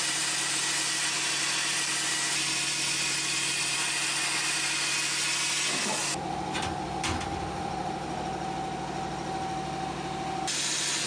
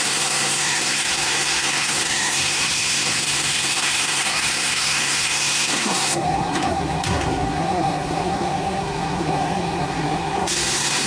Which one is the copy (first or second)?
second